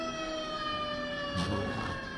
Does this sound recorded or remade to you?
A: recorded